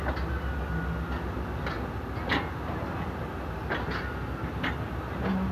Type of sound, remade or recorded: recorded